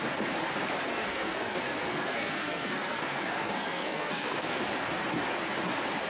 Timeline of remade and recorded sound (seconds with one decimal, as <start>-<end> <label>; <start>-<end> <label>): 0.0-0.9 recorded; 0.9-4.6 remade; 4.6-6.1 recorded